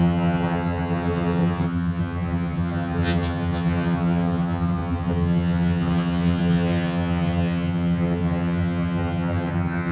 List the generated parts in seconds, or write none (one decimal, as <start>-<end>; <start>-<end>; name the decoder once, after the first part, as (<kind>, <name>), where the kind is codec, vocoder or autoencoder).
0.0-9.9 (vocoder, HiFi-GAN)